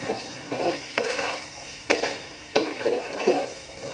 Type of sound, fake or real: fake